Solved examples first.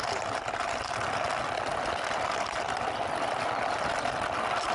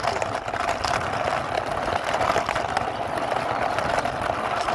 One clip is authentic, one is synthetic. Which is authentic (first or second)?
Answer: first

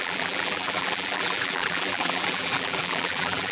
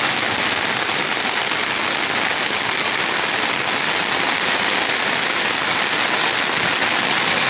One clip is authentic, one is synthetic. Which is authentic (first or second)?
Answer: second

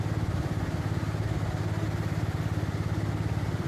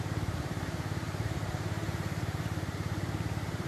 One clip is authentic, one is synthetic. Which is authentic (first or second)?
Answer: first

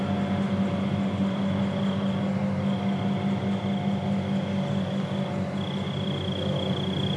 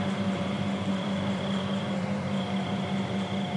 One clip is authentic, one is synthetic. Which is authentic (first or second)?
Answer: first